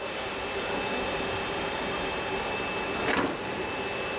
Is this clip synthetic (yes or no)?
no